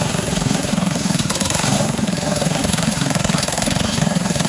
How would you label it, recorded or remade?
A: remade